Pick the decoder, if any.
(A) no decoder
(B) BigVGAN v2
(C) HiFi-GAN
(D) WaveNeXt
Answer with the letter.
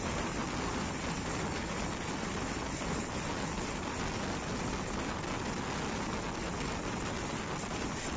A